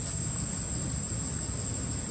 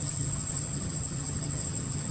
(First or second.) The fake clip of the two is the second